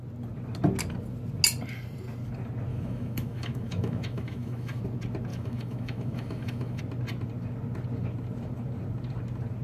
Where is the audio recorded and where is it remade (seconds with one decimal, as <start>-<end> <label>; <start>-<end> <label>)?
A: 0.0-2.7 recorded; 2.7-4.8 remade; 4.8-5.3 recorded; 5.3-6.8 remade; 6.8-9.6 recorded